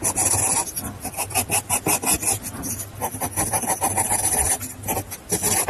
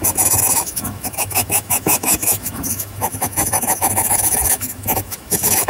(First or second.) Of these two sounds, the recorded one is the first